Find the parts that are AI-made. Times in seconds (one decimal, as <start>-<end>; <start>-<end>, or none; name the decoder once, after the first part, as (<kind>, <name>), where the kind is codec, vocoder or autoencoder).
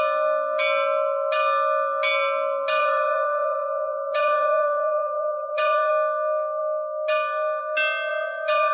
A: 2.8-5.9 (vocoder, BigVGAN v2); 8.1-8.7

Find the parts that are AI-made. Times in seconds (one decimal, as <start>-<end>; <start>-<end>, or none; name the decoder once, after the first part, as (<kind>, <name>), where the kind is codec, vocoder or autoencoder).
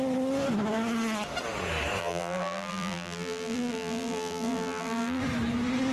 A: 2.0-5.2 (vocoder, BigVGAN v2)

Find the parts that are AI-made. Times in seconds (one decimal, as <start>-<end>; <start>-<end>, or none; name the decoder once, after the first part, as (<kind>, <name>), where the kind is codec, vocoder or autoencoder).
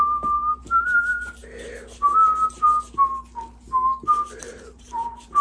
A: 0.0-1.4 (vocoder, BigVGAN v2); 4.4-5.4